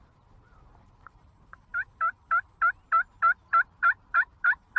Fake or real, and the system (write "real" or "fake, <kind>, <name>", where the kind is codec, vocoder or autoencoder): fake, vocoder, BigVGAN v2